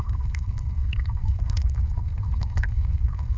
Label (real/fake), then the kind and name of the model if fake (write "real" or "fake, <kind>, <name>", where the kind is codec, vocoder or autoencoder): fake, codec, SNAC